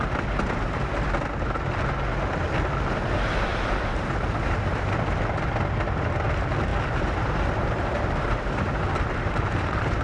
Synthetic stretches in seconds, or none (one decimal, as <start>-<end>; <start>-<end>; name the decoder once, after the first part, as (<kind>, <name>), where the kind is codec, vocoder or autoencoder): 3.5-4.8 (vocoder, BigVGAN v2); 6.7-10.0